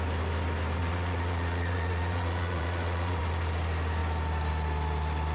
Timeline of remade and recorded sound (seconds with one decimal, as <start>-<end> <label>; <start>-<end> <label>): 0.0-0.8 recorded; 0.8-3.2 remade; 3.2-5.3 recorded